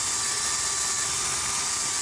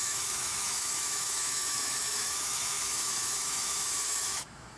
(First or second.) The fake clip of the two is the second